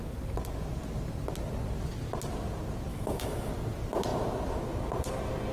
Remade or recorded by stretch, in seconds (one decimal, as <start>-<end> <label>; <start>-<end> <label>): 0.0-2.9 recorded; 2.9-3.5 remade; 3.5-5.5 recorded